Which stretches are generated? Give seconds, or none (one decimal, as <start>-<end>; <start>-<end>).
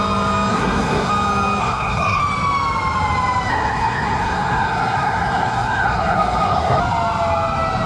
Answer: 0.5-1.1; 1.6-2.2; 3.5-6.8